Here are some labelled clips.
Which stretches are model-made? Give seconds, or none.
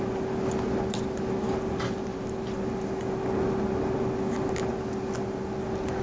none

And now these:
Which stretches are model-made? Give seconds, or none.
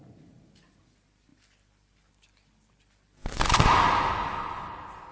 none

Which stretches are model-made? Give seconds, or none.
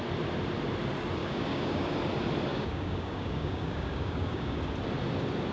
1.2-1.9 (codec, DAC); 2.5-4.6